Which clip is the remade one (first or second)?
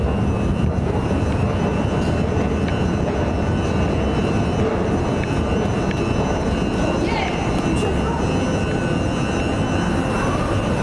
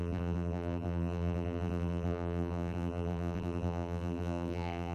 second